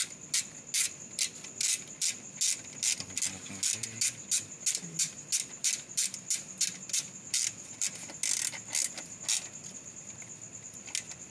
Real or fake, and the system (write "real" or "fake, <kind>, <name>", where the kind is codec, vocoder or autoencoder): real